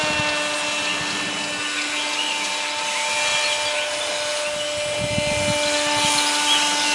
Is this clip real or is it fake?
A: real